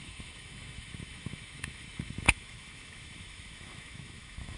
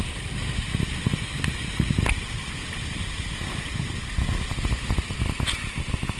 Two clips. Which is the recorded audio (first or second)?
second